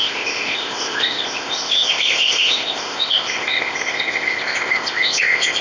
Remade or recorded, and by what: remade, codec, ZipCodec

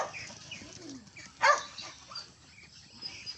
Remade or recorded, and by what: recorded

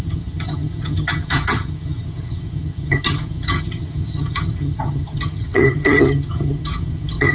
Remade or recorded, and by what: remade, vocoder, HiFi-GAN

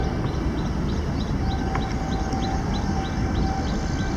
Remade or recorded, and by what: recorded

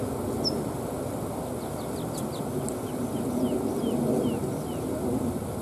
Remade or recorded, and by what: recorded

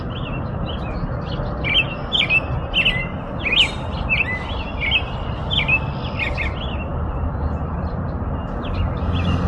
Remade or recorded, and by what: recorded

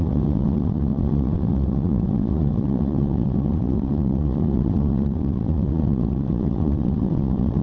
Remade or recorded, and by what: remade, vocoder, WaveNeXt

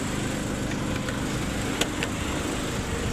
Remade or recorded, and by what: recorded